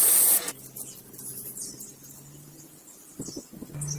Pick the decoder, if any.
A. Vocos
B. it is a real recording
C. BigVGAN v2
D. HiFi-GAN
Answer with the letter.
B